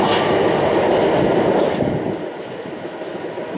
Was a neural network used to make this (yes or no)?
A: no